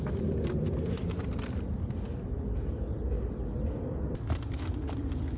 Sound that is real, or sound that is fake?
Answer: real